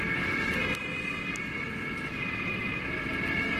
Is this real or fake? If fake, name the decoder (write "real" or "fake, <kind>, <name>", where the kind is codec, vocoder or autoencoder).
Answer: real